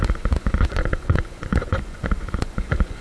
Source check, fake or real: fake